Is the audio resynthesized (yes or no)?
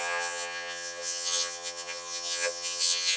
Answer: yes